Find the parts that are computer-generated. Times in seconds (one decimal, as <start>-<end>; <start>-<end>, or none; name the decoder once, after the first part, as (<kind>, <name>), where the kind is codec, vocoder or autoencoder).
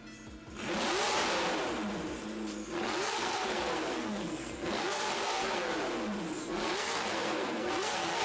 2.6-5.7 (codec, SNAC); 6.4-8.2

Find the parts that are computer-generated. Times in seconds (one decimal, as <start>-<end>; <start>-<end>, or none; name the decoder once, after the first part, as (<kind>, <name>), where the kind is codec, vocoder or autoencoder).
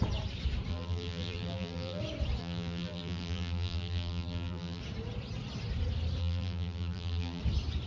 0.7-2.0 (vocoder, BigVGAN v2); 2.4-4.8; 6.2-7.4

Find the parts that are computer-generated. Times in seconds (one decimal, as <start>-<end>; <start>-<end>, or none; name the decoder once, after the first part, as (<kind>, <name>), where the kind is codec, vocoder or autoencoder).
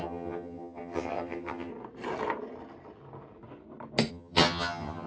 0.0-1.7 (vocoder, HiFi-GAN); 4.1-5.1